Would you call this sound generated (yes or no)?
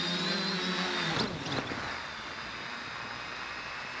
yes